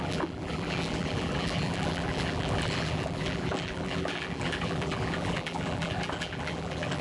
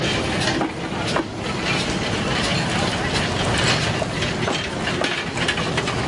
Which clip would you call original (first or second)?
second